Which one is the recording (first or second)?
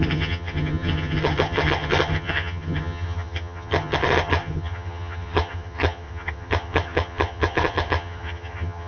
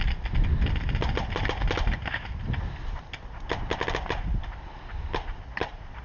second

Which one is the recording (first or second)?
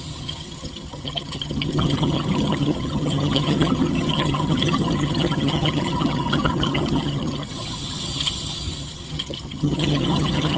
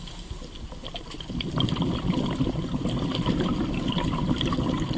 second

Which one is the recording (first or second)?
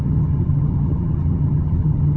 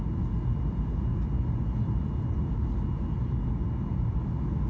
second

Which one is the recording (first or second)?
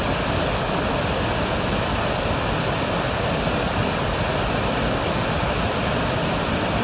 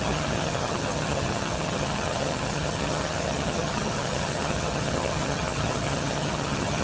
first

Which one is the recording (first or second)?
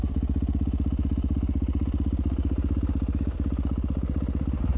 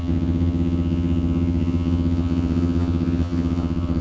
first